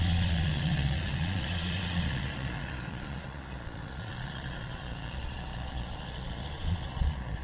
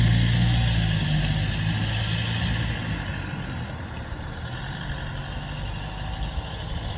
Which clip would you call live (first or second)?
second